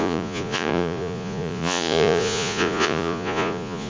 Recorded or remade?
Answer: remade